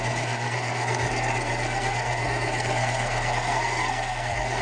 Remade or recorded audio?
remade